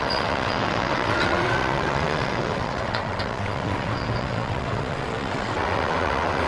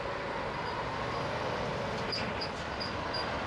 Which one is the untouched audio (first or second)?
second